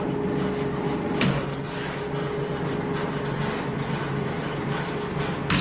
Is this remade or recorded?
recorded